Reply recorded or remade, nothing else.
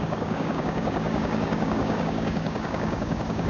remade